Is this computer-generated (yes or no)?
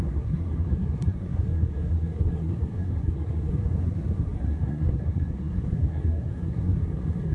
yes